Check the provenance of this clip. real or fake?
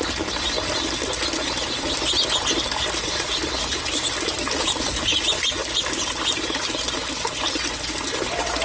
real